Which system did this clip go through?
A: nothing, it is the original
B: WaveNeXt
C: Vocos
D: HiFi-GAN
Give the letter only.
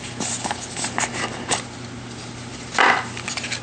A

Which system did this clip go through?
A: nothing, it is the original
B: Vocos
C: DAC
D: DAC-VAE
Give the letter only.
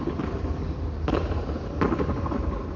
A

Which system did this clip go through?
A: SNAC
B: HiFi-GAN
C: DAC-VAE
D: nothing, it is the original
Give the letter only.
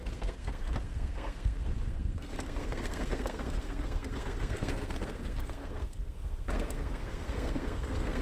A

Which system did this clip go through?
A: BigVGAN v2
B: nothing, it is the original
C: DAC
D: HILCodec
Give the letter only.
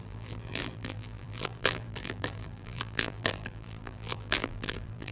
A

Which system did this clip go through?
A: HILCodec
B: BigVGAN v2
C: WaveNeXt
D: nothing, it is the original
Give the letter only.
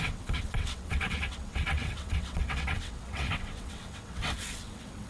C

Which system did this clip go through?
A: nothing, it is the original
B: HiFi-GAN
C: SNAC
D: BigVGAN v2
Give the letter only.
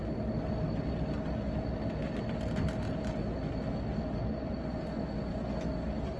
A